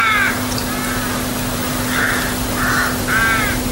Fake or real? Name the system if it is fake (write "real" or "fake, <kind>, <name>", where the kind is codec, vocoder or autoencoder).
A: real